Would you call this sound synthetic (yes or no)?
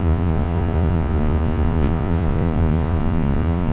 yes